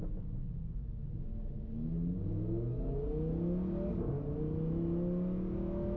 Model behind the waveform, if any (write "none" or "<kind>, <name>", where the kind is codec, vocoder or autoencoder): none